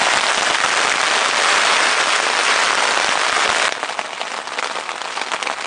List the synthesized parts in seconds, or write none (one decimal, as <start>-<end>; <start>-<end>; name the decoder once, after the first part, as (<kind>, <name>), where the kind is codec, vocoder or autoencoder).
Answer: none